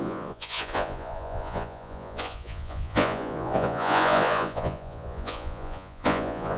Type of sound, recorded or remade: remade